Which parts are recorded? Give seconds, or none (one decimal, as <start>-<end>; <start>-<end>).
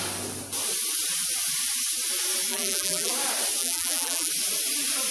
0.0-2.5; 3.1-3.6; 4.3-5.1